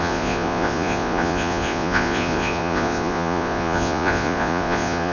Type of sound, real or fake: fake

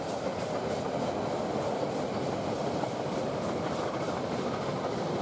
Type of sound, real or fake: real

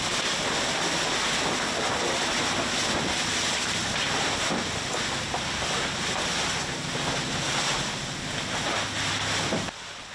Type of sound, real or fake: real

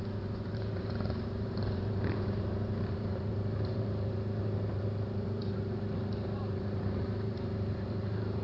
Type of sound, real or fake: fake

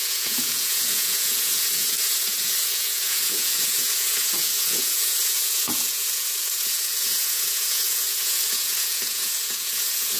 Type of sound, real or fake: fake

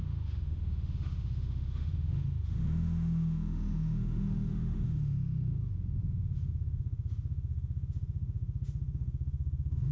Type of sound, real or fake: fake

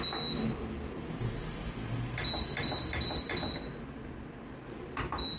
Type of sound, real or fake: real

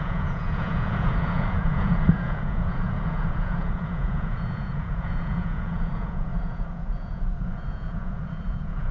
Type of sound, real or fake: fake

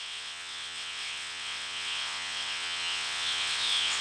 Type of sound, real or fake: fake